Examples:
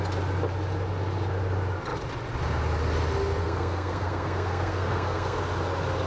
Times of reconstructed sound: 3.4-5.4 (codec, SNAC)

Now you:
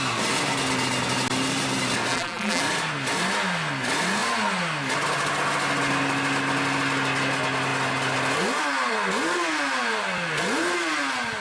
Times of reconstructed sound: 2.1-2.6 (vocoder, BigVGAN v2)

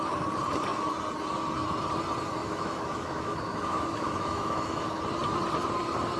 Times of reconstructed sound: 2.4-5.0 (autoencoder, DAC-VAE)

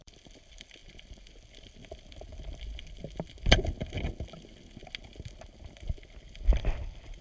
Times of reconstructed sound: 0.0-0.8 (vocoder, BigVGAN v2); 1.3-2.3; 6.6-7.2

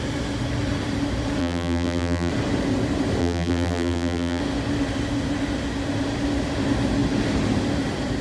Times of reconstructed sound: 1.4-2.3 (vocoder, BigVGAN v2); 3.2-4.4

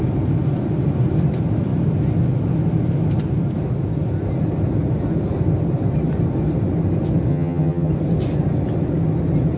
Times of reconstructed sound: 7.3-7.9 (vocoder, HiFi-GAN)